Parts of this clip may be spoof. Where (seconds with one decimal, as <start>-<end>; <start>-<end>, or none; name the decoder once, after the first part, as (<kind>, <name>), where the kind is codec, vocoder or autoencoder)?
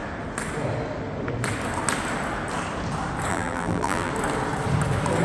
3.3-4.1 (vocoder, BigVGAN v2)